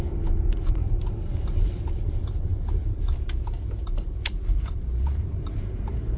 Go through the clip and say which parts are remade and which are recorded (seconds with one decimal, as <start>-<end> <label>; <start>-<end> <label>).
0.0-6.2 remade